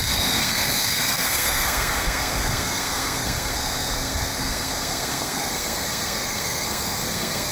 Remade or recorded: remade